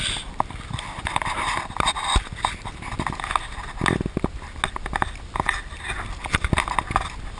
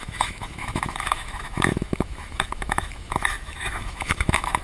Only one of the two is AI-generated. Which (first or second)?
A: second